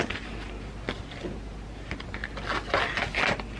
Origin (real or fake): real